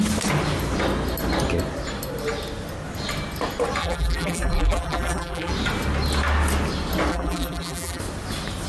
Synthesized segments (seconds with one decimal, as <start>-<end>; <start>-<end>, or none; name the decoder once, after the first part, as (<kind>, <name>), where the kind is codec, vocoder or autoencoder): 3.8-5.5 (vocoder, BigVGAN v2); 7.1-8.0